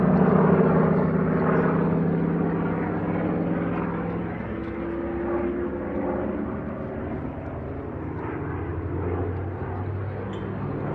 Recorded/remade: recorded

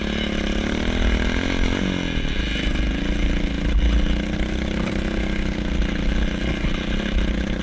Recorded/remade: recorded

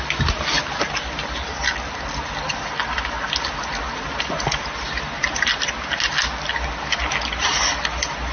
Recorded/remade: recorded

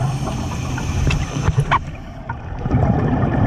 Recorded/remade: remade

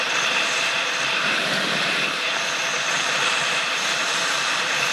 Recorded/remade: remade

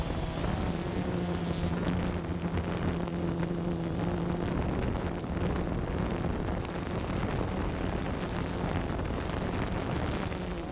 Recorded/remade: recorded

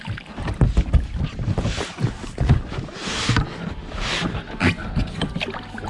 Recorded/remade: recorded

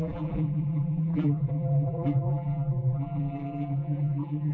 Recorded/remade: remade